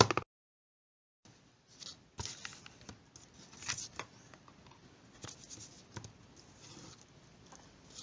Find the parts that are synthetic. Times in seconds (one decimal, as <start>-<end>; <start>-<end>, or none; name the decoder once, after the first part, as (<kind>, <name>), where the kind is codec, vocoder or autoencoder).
none